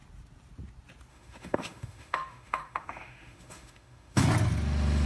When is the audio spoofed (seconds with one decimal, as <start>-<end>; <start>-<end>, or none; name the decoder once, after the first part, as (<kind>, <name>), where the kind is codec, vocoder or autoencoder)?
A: 1.1-4.2 (autoencoder, DAC-VAE)